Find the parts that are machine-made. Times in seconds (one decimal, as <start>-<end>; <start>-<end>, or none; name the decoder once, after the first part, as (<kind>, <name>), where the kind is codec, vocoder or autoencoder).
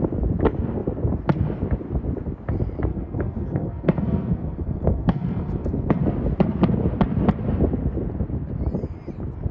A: 2.9-6.0 (codec, SNAC)